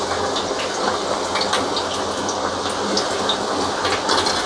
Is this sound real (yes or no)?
yes